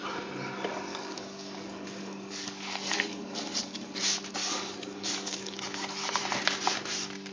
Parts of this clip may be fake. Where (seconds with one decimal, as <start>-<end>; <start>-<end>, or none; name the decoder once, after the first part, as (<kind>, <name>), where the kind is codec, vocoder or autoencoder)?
0.9-4.0 (codec, DAC); 4.4-6.2